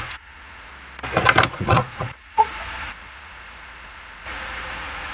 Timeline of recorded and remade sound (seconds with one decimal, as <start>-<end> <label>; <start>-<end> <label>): 0.0-0.7 remade; 0.7-1.5 recorded; 1.5-5.1 remade